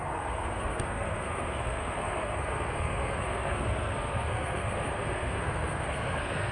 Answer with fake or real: fake